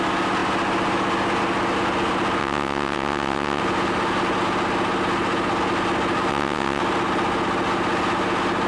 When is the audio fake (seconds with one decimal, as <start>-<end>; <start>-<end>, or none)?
2.4-3.6; 6.3-6.8